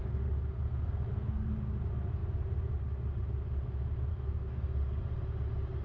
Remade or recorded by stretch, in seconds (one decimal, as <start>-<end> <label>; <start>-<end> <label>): 0.0-1.5 remade; 1.5-4.1 recorded; 4.1-5.0 remade; 5.0-5.8 recorded